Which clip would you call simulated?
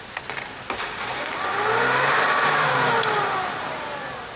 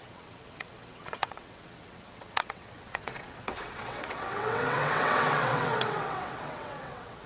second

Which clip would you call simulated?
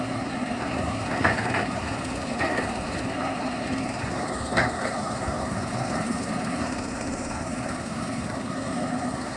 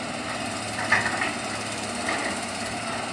first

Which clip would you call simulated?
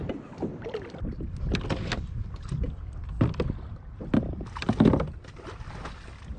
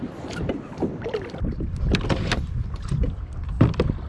second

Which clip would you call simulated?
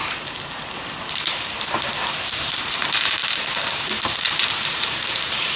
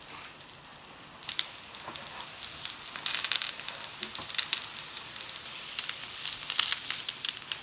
first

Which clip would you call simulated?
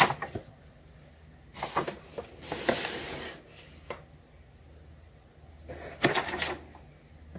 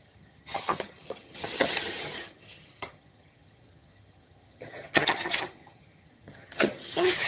second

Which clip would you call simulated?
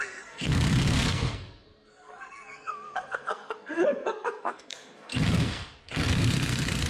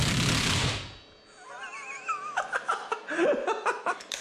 first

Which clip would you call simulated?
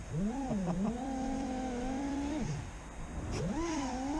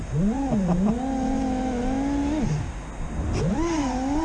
first